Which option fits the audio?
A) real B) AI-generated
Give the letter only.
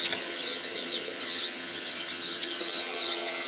B